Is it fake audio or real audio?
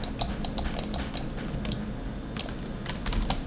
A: real